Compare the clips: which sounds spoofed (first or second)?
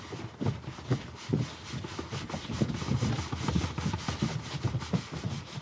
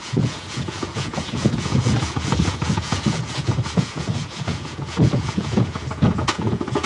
second